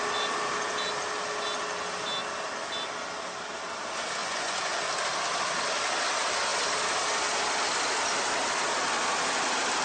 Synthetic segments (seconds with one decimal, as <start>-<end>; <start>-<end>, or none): 4.2-4.9